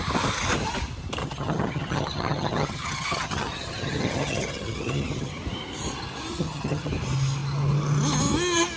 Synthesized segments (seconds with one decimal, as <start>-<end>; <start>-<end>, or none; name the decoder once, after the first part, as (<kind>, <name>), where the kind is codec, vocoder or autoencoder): 1.2-5.3 (vocoder, HiFi-GAN); 6.3-6.9